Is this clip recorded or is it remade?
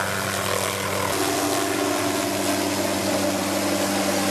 recorded